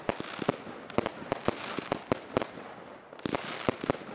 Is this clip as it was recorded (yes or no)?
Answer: yes